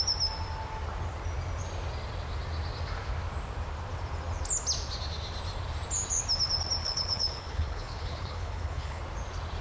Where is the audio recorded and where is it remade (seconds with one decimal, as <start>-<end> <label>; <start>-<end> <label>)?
0.0-6.8 recorded; 6.8-9.0 remade; 9.0-9.6 recorded